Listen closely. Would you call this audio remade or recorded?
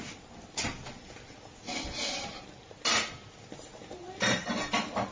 recorded